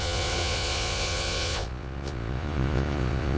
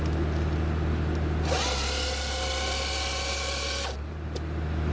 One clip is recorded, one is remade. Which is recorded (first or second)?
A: second